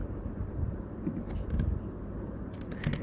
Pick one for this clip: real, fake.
real